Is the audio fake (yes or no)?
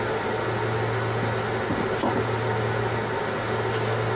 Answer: no